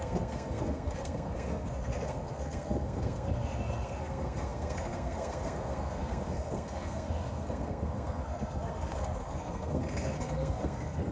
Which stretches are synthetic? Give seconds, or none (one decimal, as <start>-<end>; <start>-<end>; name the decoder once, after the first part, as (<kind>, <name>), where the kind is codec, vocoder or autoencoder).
0.0-11.1 (codec, SNAC)